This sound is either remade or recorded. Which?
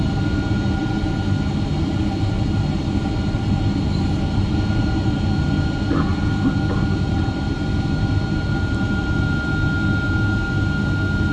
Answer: recorded